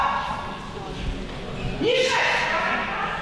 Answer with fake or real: real